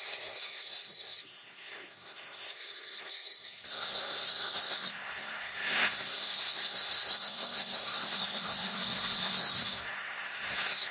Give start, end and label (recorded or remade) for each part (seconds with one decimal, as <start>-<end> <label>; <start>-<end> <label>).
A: 0.0-10.9 remade